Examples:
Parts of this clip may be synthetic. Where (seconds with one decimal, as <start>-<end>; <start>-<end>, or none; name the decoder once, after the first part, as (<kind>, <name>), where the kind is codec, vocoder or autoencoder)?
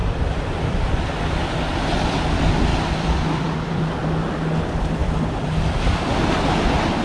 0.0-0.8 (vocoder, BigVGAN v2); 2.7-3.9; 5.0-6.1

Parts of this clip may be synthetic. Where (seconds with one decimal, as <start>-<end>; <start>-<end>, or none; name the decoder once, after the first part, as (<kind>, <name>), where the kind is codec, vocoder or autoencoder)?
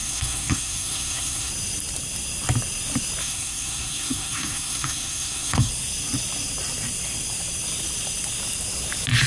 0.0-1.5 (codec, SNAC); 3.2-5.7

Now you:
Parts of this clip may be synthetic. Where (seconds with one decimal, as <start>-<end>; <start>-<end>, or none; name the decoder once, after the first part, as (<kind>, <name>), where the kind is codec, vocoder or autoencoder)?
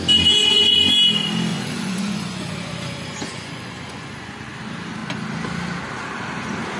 0.4-0.9 (vocoder, Vocos); 1.5-4.5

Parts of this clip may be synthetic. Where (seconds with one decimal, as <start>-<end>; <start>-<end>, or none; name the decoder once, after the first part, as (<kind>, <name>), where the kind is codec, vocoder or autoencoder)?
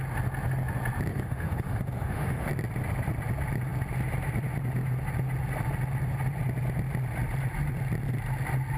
1.1-2.5 (autoencoder, DAC-VAE)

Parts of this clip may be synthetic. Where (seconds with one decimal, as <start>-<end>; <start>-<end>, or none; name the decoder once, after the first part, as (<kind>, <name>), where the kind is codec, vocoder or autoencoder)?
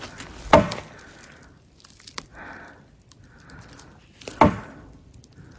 none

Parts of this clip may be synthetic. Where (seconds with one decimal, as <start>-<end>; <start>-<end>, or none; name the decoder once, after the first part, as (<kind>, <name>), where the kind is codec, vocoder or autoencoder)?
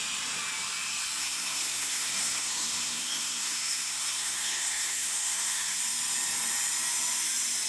1.2-5.8 (codec, SNAC)